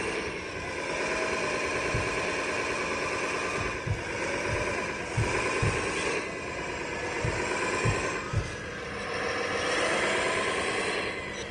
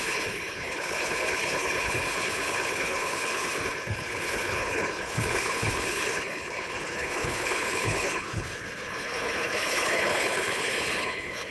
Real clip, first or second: first